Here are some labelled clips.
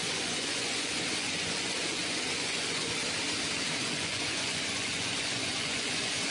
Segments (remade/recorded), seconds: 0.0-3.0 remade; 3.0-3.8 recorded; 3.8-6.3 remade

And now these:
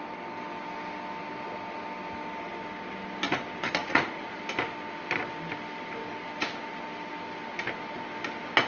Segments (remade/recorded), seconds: 0.0-3.8 recorded; 3.8-4.4 remade; 4.4-8.7 recorded